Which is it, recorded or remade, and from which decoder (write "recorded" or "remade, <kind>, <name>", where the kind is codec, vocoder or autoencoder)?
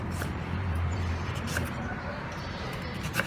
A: remade, vocoder, BigVGAN v2